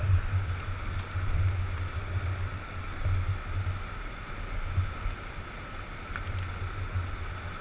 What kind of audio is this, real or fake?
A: real